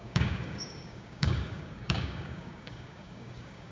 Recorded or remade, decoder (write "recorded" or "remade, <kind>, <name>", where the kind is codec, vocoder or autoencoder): remade, codec, DAC